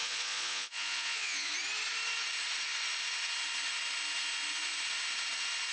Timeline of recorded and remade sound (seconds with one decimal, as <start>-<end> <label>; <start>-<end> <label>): 0.0-1.5 remade; 1.5-5.7 recorded